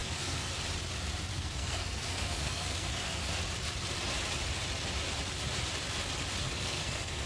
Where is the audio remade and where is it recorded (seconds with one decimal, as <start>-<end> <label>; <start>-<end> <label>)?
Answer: 0.0-0.5 remade; 0.5-1.3 recorded; 1.3-3.4 remade; 3.4-6.4 recorded; 6.4-7.3 remade